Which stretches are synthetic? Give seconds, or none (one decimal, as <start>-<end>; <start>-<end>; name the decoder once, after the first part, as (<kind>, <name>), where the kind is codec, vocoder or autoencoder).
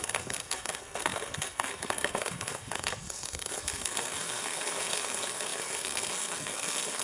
0.0-7.0 (codec, SNAC)